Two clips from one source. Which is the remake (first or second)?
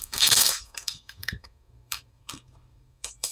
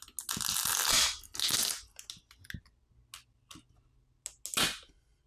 first